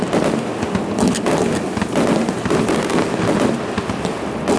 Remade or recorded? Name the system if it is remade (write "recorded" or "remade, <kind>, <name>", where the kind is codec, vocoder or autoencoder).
recorded